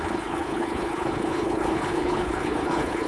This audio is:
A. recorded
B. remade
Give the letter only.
B